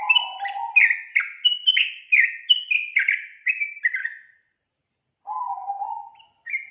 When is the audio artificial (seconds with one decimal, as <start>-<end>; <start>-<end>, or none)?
4.0-4.7